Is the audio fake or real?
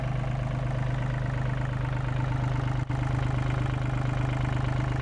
real